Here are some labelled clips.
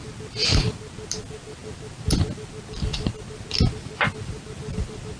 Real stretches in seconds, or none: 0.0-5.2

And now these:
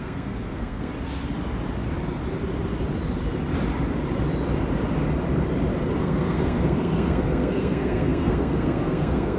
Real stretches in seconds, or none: 0.9-6.0

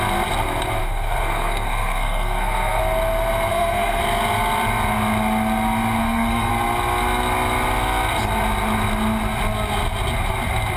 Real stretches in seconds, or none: 0.0-0.8; 2.8-3.5; 4.0-6.0; 6.5-10.8

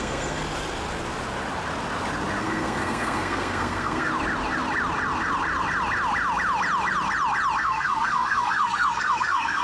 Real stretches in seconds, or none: 0.4-2.4; 4.1-7.6

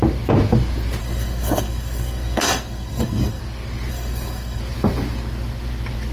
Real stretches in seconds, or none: 0.0-1.0; 3.4-3.9; 4.6-6.1

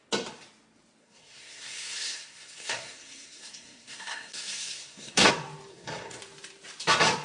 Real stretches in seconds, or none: 0.0-1.0; 5.3-5.7; 6.2-7.2

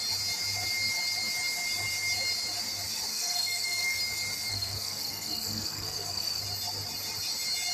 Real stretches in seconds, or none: 0.0-3.1; 4.0-4.5; 6.4-7.7